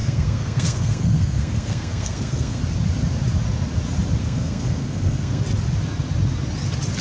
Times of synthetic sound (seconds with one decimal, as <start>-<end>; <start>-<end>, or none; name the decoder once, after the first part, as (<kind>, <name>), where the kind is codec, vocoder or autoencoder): 0.0-2.6 (codec, SNAC); 4.2-5.4